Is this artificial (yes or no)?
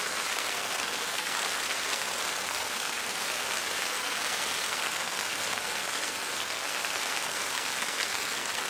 yes